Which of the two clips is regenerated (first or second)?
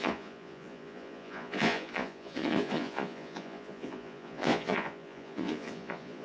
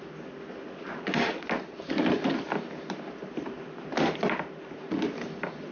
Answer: first